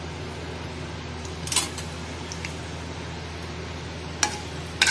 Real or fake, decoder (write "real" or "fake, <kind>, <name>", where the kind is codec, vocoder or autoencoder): real